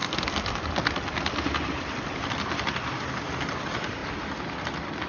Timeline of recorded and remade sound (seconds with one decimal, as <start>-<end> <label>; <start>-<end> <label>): 0.0-5.1 recorded